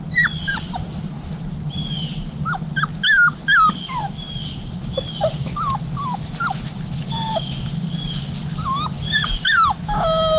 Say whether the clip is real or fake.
real